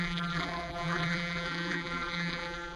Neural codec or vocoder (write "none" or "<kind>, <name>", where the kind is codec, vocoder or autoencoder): vocoder, BigVGAN v2